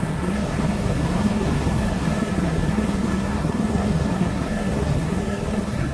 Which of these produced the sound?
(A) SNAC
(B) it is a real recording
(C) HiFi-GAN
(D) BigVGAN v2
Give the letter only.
A